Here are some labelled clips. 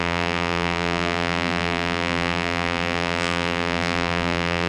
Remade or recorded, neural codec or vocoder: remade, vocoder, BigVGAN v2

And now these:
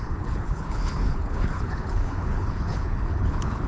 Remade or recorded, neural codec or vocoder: remade, codec, HILCodec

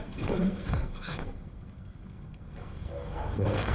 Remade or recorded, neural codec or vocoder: remade, codec, SNAC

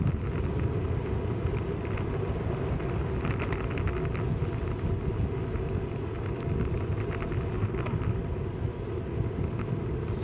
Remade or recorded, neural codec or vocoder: recorded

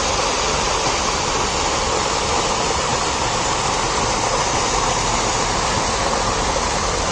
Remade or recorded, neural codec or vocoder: recorded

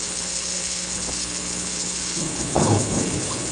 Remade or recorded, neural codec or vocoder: remade, codec, HILCodec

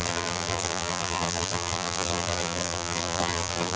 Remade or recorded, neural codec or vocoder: remade, vocoder, BigVGAN v2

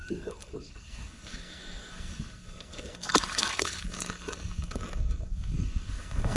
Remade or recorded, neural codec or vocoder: remade, codec, SNAC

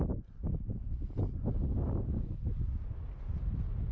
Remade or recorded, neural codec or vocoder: recorded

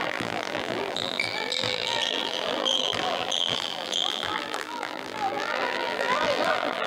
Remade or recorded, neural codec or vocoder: remade, vocoder, BigVGAN v2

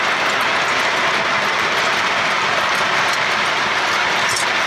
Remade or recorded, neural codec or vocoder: recorded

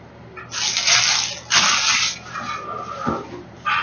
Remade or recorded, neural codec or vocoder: recorded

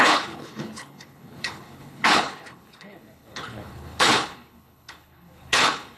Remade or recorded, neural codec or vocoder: remade, codec, HILCodec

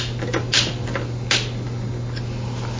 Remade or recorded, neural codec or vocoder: recorded